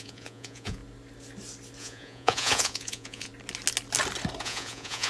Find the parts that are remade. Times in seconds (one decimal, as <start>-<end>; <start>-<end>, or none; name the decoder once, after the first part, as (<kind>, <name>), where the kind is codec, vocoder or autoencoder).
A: 0.0-0.8 (vocoder, Vocos); 1.8-3.3; 4.4-5.1